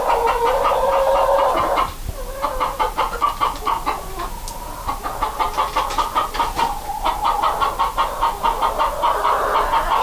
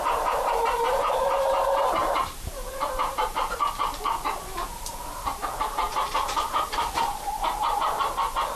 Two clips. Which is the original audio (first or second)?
first